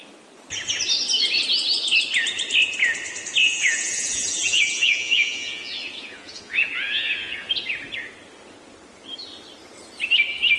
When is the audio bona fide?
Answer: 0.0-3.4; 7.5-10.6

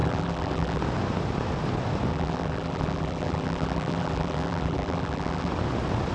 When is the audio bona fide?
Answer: 0.8-2.1; 5.5-6.1

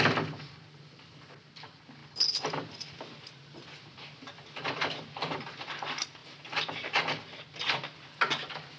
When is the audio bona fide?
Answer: 0.0-8.8

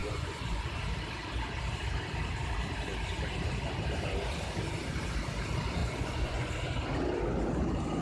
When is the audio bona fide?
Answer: 0.8-5.8; 6.5-8.0

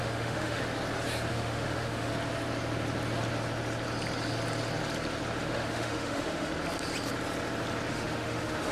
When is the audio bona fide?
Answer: 0.6-1.3; 2.1-5.4; 6.5-7.9

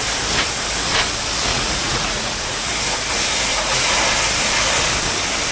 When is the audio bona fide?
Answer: 0.0-1.5; 2.7-3.5; 4.0-5.5